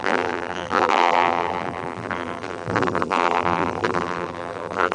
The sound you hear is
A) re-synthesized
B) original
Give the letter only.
A